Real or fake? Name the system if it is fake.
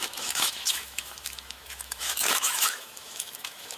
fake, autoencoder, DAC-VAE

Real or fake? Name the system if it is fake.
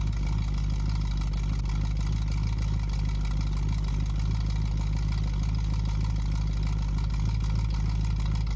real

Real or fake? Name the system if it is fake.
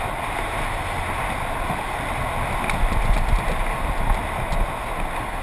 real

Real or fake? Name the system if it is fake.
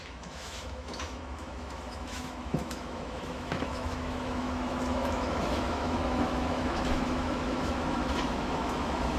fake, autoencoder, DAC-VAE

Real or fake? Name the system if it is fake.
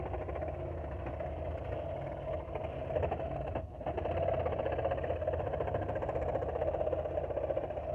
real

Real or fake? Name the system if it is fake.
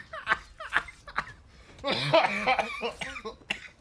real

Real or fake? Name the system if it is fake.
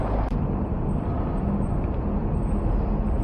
real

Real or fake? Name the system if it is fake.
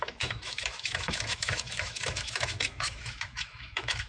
fake, autoencoder, DAC-VAE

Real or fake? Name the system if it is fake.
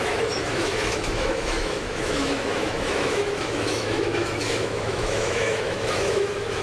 fake, autoencoder, DAC-VAE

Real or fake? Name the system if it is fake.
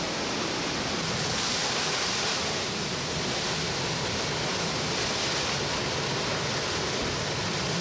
real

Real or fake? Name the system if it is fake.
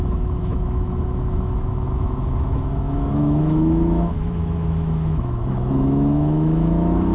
fake, autoencoder, DAC-VAE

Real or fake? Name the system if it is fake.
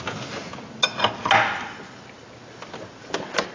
real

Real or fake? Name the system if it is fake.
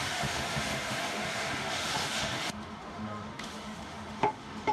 fake, autoencoder, DAC-VAE